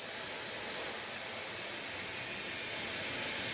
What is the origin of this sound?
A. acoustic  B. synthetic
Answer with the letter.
A